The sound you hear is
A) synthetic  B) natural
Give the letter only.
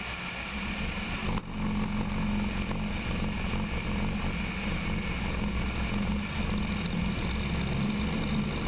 B